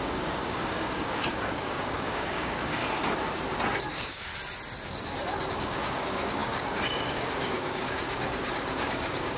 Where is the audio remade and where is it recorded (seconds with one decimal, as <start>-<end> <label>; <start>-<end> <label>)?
0.0-2.8 remade; 2.8-3.9 recorded; 3.9-4.3 remade; 4.3-5.5 recorded; 5.5-9.4 remade